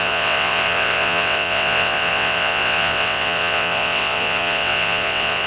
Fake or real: fake